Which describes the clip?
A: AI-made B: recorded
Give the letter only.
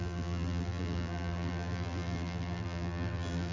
A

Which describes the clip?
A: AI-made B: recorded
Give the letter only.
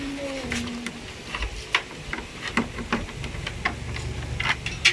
B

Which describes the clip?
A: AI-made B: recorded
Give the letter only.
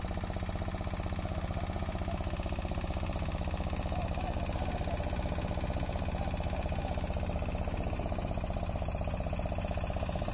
B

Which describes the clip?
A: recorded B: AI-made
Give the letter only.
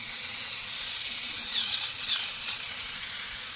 B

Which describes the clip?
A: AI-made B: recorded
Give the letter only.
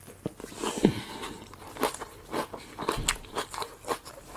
B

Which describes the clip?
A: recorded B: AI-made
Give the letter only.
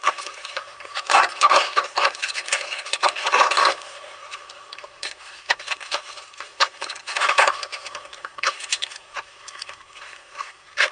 B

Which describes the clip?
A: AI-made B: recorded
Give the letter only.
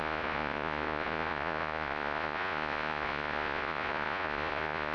A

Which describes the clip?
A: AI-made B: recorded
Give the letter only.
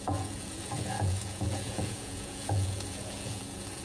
A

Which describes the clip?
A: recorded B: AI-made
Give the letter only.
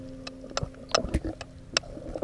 A